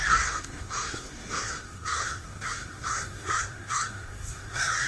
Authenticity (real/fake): fake